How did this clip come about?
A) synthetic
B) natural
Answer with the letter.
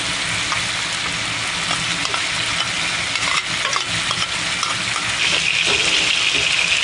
B